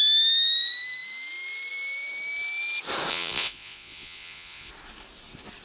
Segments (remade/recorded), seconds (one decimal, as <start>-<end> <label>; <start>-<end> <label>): 0.0-3.1 recorded; 3.1-4.7 remade; 4.7-5.6 recorded